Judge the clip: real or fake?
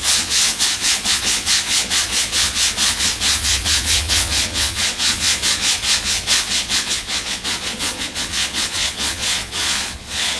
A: fake